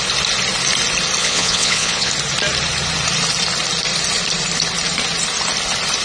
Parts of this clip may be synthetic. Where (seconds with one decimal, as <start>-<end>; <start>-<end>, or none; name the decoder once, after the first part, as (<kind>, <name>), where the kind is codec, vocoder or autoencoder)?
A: 1.2-2.1 (vocoder, Vocos)